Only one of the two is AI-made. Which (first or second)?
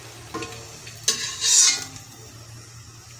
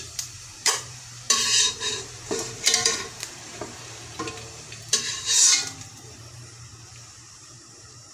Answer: second